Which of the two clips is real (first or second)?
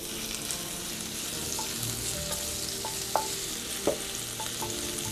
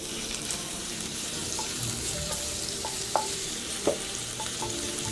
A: first